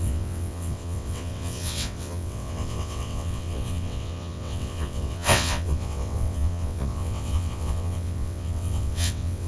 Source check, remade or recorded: remade